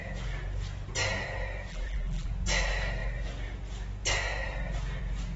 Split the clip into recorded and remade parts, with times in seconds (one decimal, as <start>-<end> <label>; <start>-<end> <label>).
0.0-1.7 recorded; 1.7-2.3 remade; 2.3-5.4 recorded